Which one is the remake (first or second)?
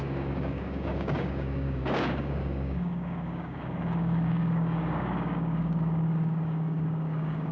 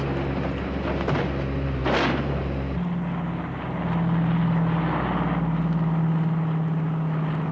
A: first